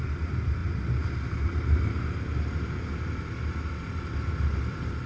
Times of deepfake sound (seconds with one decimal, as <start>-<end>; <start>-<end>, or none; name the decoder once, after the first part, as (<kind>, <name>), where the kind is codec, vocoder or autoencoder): none